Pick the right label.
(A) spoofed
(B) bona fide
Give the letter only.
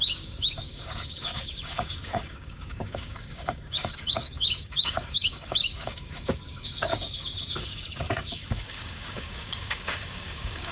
A